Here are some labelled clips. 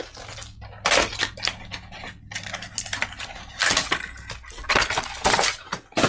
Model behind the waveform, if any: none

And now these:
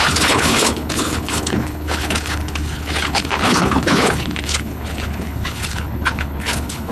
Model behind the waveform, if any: codec, HILCodec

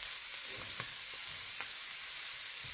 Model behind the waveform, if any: none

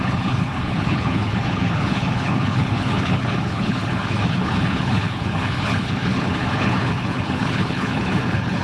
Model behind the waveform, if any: codec, HILCodec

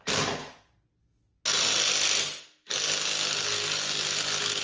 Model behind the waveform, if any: none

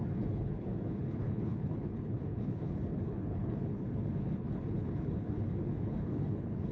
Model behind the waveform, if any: codec, HILCodec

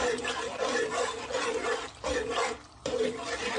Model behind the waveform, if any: none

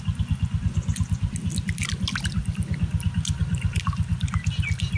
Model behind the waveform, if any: none